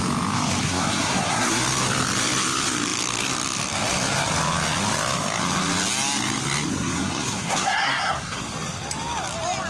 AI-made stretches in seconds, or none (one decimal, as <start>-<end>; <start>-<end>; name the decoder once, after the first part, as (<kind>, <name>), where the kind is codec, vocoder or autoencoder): 0.6-1.6 (codec, SNAC); 6.7-8.4